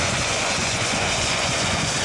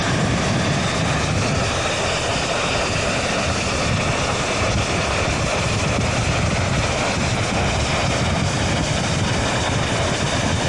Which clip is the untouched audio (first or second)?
second